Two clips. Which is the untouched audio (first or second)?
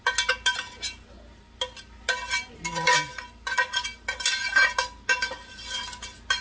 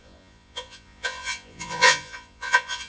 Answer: first